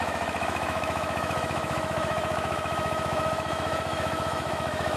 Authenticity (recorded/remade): remade